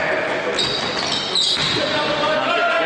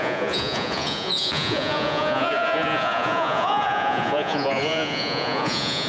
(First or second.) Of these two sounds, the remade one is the second